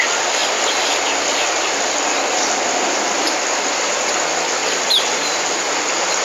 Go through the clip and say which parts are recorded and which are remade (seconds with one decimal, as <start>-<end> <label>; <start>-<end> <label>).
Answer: 0.0-6.2 recorded